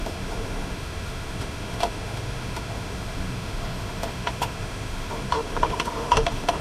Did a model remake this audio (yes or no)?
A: yes